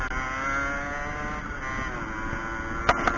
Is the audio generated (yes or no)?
no